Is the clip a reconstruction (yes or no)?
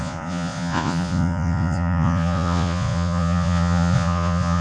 yes